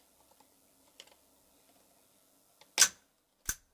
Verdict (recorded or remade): recorded